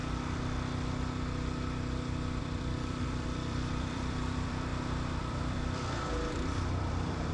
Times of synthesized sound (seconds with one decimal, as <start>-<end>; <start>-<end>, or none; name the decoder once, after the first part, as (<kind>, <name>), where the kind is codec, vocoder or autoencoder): 2.4-4.7 (vocoder, BigVGAN v2); 5.2-7.3